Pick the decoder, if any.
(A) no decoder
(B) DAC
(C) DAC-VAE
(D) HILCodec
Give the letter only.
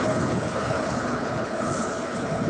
D